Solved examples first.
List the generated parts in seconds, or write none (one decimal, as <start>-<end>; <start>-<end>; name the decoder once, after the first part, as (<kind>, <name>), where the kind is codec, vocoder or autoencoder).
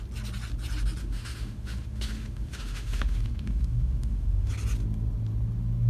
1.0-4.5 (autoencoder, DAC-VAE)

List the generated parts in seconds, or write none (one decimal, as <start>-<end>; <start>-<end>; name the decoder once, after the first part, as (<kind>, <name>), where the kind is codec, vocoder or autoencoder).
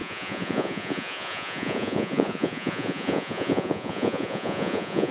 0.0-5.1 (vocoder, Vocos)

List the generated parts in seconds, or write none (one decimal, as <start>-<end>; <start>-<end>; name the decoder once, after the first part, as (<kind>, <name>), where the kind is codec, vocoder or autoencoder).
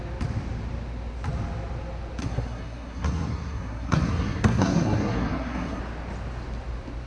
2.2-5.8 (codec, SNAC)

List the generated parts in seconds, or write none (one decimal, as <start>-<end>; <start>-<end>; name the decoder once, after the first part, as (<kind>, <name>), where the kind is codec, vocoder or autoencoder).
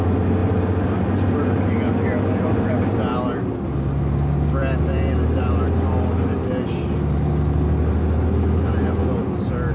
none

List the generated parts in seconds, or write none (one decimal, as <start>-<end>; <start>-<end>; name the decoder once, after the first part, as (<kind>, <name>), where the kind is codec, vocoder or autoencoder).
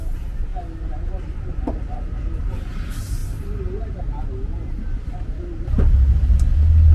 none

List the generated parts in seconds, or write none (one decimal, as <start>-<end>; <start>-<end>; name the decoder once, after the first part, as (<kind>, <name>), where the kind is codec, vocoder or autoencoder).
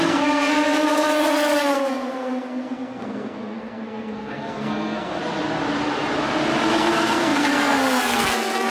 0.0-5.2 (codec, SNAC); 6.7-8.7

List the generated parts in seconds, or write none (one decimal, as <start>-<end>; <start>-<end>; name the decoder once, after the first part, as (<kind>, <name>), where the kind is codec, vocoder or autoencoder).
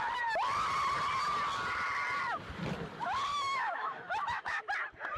3.3-4.6 (autoencoder, DAC-VAE)